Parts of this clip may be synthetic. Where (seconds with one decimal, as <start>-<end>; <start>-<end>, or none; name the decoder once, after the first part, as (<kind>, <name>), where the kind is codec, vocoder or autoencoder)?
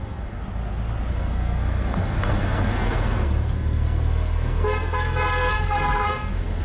0.0-0.4 (codec, SNAC); 1.1-6.6